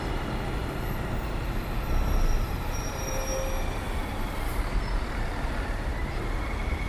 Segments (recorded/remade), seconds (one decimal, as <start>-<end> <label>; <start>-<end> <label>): 0.0-0.6 recorded; 0.6-3.1 remade; 3.1-4.0 recorded; 4.0-6.5 remade; 6.5-6.9 recorded